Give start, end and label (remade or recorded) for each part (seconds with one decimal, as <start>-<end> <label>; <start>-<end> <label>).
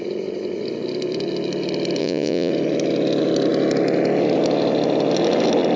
0.0-2.0 recorded; 2.0-2.5 remade; 2.5-5.8 recorded